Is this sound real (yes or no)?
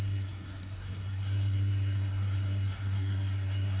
no